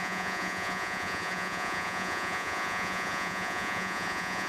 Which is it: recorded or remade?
remade